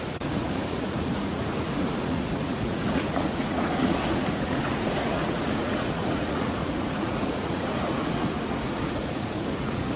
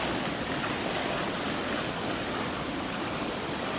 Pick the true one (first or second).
second